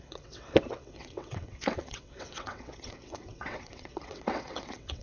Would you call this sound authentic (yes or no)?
no